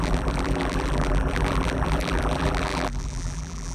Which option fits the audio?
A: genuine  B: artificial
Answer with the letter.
B